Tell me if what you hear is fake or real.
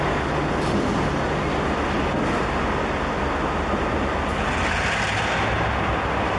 real